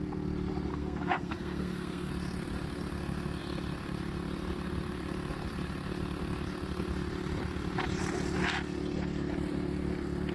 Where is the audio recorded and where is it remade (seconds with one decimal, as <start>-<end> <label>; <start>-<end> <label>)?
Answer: 0.0-0.7 recorded; 0.7-2.1 remade; 2.1-10.3 recorded